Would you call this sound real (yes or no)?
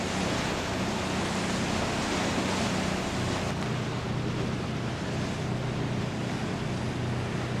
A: yes